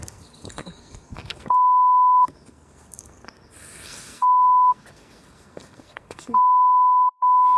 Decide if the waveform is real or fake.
fake